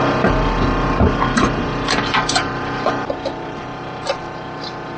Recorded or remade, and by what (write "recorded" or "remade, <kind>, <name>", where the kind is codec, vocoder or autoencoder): recorded